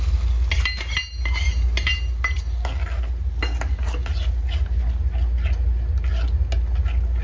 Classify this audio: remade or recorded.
recorded